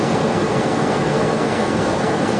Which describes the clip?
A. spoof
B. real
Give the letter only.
A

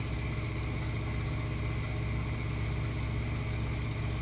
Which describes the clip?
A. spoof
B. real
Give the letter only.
B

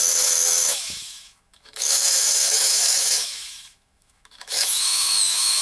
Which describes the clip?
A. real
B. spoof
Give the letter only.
B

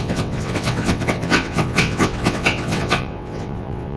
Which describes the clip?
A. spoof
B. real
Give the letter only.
A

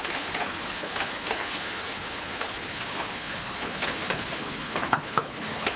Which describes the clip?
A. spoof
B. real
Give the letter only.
A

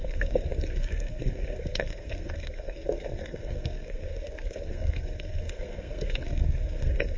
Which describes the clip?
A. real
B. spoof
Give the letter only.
B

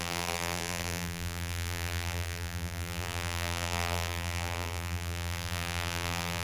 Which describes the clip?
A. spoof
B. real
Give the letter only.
A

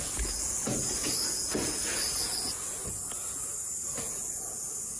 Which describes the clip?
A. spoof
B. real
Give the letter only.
A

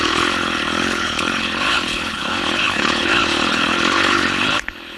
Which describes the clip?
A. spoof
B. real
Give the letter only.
A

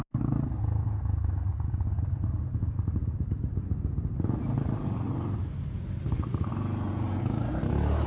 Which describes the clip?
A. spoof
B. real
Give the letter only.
B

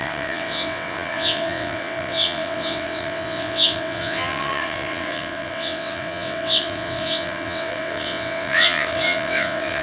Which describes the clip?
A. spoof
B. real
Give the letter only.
A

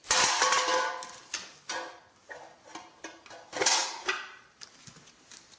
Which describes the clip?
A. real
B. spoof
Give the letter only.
A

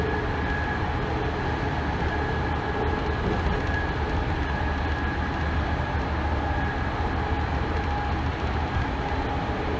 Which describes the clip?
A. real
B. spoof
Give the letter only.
A